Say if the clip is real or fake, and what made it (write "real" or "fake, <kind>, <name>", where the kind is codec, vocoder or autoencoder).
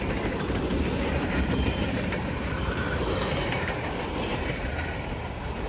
fake, vocoder, BigVGAN v2